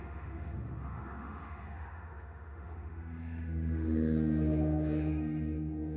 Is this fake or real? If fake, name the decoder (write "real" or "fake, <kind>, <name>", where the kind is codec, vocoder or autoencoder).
fake, autoencoder, DAC-VAE